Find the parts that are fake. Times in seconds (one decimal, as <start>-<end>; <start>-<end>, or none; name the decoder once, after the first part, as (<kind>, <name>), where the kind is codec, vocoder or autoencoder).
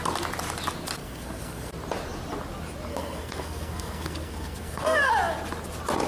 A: 1.0-1.7 (codec, SNAC); 2.9-5.1